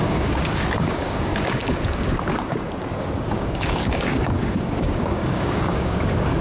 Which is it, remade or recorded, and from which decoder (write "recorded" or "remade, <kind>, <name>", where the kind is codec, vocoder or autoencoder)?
remade, codec, DAC